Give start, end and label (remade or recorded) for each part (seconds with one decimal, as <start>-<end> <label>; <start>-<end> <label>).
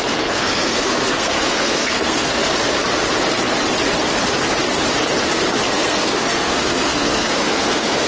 0.0-2.4 remade; 2.4-5.7 recorded; 5.7-8.1 remade